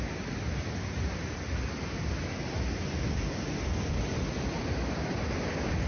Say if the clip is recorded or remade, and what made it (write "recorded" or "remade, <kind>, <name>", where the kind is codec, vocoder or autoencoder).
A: recorded